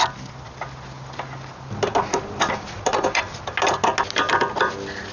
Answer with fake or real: real